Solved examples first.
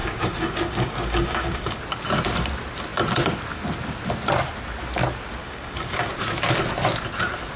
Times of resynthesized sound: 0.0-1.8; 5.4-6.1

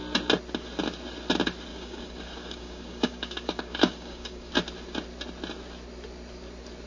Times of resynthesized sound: 1.7-4.5